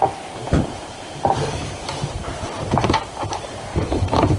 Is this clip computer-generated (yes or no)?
yes